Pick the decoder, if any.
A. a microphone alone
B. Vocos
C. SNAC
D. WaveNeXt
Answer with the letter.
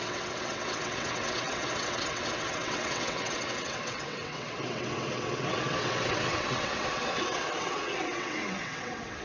D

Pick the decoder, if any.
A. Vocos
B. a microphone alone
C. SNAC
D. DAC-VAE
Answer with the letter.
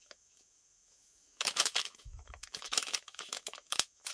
D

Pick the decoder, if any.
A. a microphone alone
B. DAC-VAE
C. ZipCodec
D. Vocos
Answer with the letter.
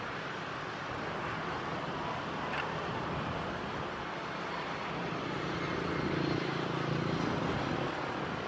A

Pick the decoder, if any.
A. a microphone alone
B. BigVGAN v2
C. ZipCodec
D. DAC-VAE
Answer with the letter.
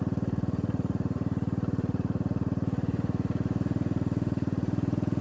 B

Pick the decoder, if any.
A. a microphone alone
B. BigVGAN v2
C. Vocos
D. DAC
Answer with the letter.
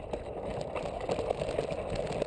A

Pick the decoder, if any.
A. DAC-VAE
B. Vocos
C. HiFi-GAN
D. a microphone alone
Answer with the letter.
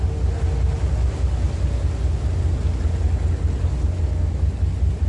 D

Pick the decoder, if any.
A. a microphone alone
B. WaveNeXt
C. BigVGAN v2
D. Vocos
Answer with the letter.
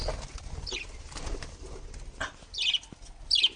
A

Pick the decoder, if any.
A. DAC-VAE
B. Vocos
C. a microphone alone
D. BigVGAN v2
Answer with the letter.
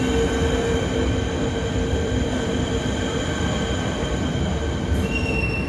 D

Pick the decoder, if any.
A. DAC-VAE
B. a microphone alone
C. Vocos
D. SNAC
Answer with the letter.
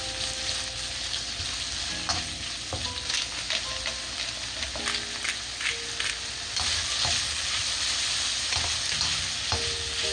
B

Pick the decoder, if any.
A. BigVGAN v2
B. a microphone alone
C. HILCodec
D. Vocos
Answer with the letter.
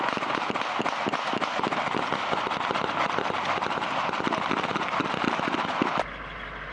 B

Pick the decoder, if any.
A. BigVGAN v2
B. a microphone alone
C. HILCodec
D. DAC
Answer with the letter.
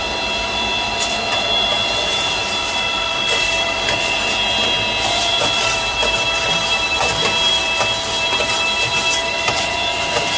A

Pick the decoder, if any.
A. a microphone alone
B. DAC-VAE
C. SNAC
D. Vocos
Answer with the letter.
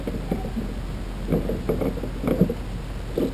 A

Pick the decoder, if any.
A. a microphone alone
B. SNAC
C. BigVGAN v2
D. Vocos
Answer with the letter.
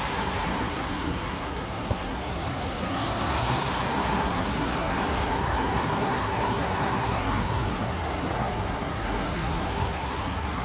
B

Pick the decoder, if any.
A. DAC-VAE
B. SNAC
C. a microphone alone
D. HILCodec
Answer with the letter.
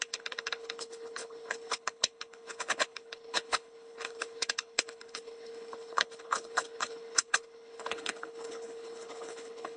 D